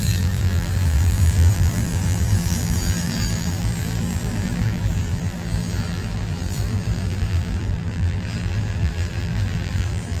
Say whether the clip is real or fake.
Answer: fake